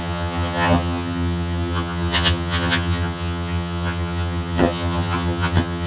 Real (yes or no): no